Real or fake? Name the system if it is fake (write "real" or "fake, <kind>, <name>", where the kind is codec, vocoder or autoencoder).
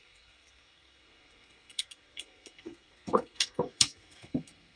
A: fake, codec, SNAC